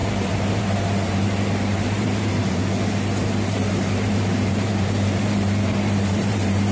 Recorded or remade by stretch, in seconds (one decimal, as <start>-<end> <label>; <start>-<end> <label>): 0.0-2.6 remade; 2.6-3.4 recorded; 3.4-6.7 remade